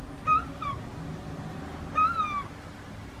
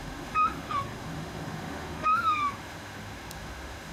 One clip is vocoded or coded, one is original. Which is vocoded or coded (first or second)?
second